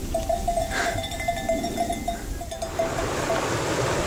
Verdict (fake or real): real